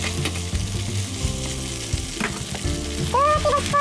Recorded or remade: recorded